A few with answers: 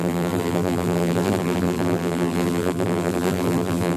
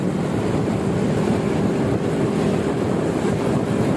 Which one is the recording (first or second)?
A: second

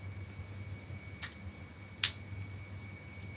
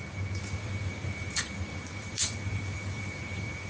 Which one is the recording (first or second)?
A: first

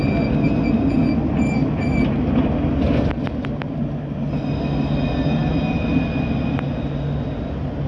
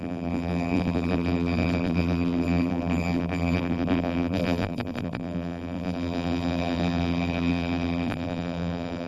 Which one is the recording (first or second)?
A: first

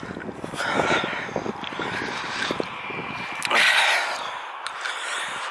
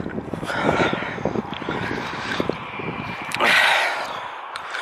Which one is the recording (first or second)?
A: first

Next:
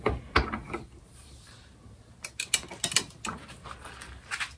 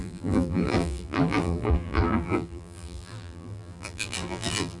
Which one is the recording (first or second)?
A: first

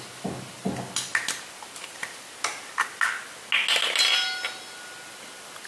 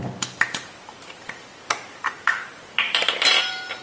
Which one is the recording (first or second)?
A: first